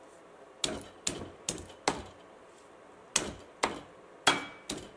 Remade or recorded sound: recorded